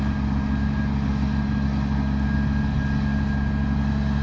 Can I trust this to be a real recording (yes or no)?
yes